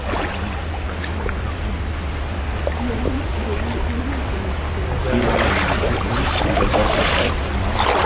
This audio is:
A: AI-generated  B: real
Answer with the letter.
B